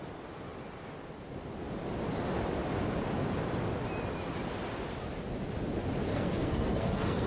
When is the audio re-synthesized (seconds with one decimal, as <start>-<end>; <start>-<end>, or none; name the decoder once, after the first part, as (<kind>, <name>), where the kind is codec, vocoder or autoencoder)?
6.1-7.3 (codec, SNAC)